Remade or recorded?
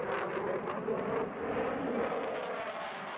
recorded